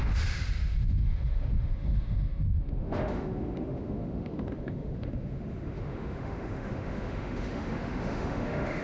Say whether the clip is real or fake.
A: fake